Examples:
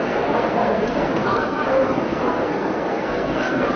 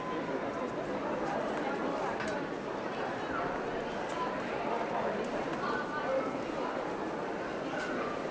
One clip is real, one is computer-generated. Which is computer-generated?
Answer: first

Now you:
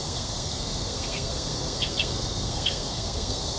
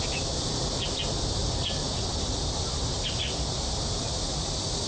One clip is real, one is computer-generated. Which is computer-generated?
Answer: first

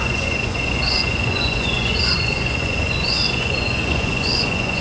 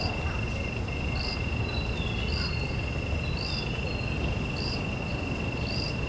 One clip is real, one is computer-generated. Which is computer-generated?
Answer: first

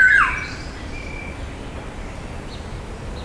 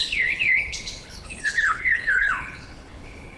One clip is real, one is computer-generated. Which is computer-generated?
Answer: second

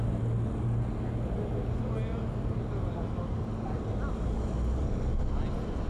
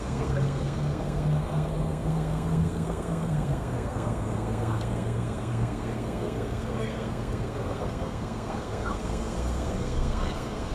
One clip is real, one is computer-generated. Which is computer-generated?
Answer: second